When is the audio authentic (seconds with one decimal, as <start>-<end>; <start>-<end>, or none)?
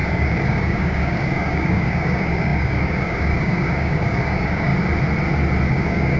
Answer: 4.7-5.7